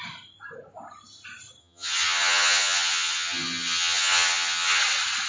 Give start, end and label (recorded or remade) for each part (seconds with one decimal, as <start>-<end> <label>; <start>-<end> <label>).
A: 0.0-1.6 recorded; 1.6-4.8 remade; 4.8-5.3 recorded